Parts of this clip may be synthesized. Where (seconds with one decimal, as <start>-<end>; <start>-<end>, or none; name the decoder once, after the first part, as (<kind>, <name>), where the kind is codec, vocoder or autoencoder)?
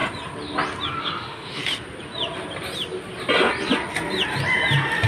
1.0-1.6 (autoencoder, DAC-VAE)